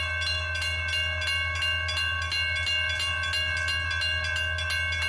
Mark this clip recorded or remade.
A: recorded